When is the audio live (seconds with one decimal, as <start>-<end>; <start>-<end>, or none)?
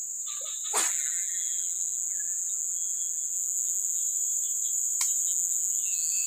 0.0-0.9; 4.0-5.2